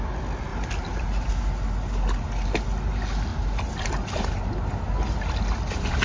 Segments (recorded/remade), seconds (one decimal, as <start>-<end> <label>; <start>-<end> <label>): 0.0-0.5 recorded; 0.5-1.3 remade; 1.3-3.3 recorded; 3.3-6.0 remade